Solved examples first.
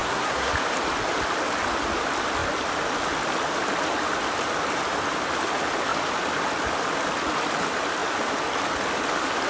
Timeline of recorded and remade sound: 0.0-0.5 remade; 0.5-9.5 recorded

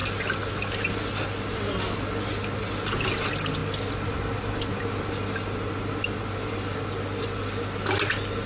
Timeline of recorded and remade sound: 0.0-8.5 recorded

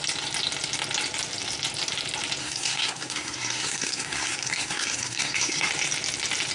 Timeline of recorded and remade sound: 0.0-2.4 recorded; 2.4-5.7 remade; 5.7-6.5 recorded